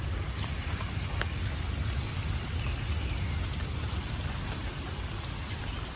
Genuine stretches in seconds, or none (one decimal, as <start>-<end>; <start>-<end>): 0.0-6.0